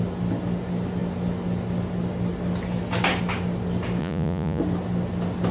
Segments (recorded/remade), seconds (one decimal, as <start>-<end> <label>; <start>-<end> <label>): 0.0-4.0 recorded; 4.0-4.6 remade; 4.6-5.5 recorded